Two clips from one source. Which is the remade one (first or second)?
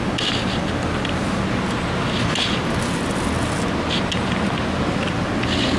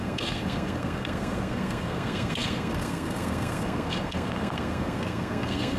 second